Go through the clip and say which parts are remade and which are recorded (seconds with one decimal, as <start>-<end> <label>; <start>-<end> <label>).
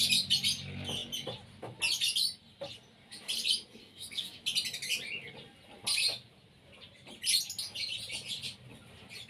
0.0-3.8 recorded; 3.8-4.4 remade; 4.4-9.3 recorded